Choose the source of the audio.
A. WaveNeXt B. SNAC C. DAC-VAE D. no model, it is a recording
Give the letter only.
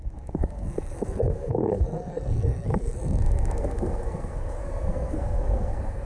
B